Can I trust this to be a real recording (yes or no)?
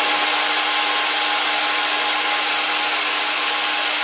yes